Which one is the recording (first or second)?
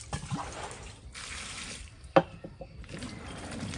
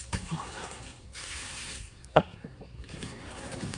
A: first